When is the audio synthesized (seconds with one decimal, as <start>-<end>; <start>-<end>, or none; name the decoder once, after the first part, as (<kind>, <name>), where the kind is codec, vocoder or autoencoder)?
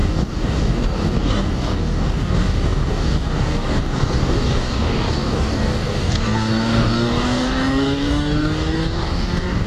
0.0-9.7 (codec, DAC)